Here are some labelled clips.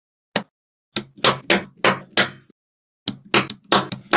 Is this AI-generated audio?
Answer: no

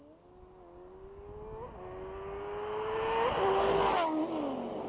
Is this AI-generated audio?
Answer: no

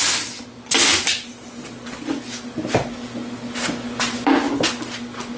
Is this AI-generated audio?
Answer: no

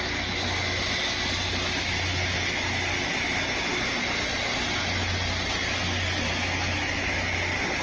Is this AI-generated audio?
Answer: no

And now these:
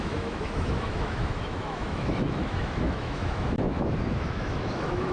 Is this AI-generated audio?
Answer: yes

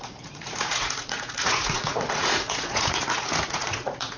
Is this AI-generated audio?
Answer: yes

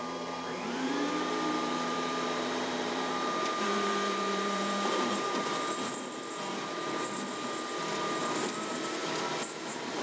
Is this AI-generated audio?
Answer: yes